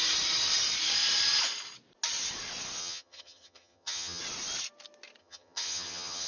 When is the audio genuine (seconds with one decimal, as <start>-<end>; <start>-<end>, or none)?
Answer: 0.0-2.8; 4.2-5.2